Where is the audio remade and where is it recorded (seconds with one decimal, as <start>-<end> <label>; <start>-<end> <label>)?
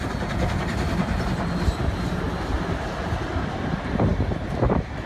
0.0-5.1 recorded